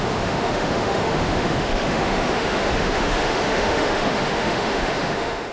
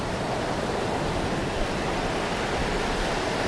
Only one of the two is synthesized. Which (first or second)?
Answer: first